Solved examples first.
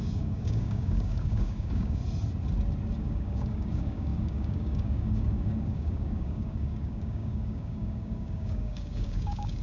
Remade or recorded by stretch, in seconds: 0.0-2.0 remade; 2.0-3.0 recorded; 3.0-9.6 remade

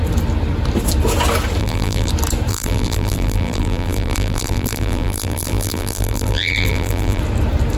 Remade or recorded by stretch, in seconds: 0.0-1.6 recorded; 1.6-2.1 remade; 2.1-2.5 recorded; 2.5-7.2 remade; 7.2-7.8 recorded